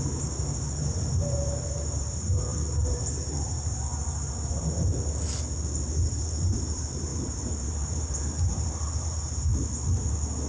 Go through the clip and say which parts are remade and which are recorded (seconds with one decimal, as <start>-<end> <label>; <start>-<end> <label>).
0.0-4.9 remade; 4.9-5.9 recorded; 5.9-9.5 remade; 9.5-10.5 recorded